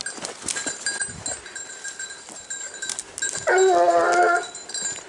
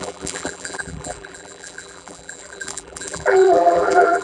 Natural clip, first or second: first